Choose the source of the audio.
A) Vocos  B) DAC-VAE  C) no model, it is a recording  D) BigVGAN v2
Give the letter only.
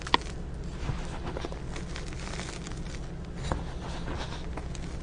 C